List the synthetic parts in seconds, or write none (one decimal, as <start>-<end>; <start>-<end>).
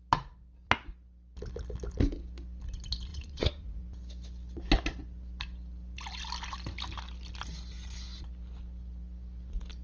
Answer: 3.1-3.8